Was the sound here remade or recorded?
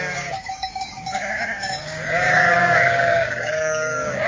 remade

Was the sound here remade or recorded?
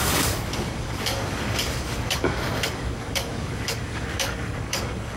remade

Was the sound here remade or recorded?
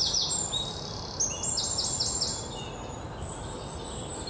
recorded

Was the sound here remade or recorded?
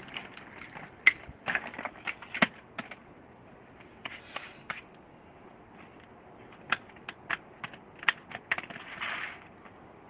recorded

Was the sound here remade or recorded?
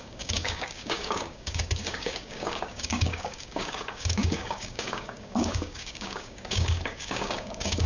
remade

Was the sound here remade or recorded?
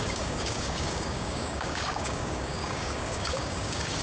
remade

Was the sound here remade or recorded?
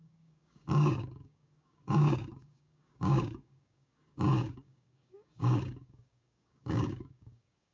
remade